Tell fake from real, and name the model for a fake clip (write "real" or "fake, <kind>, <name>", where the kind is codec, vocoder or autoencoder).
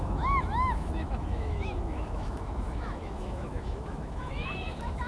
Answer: fake, autoencoder, DAC-VAE